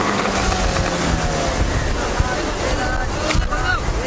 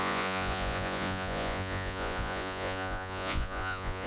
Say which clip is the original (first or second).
first